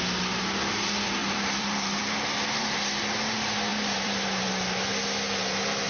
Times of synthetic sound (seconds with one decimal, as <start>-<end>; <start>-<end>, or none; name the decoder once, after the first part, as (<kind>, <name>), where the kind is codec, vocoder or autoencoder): 1.2-2.0 (vocoder, BigVGAN v2); 3.7-4.5